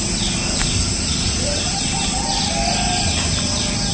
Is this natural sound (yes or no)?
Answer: yes